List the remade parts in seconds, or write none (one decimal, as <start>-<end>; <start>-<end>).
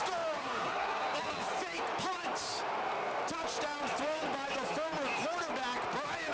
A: 0.4-1.0